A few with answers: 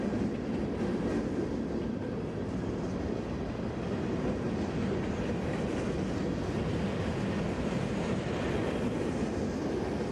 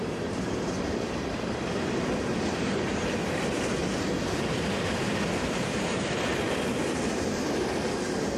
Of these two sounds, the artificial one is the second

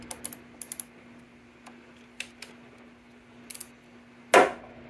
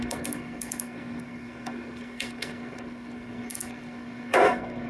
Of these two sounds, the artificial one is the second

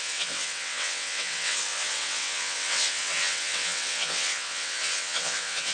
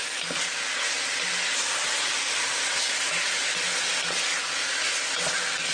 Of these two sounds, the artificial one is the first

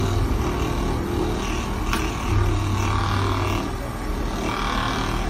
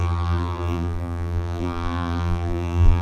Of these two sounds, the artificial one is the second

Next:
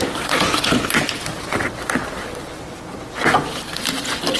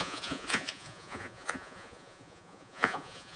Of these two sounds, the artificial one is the second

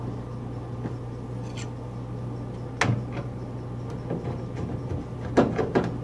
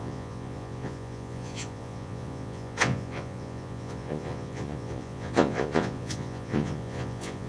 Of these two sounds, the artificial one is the second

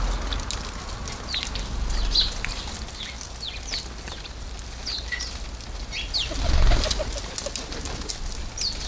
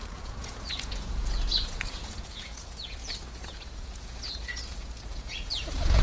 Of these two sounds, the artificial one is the second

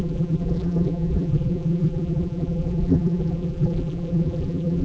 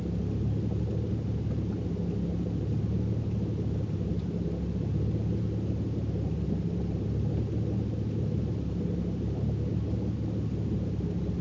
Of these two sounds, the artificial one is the first